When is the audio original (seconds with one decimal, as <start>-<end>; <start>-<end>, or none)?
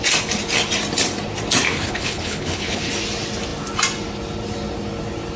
0.0-1.7; 2.9-5.4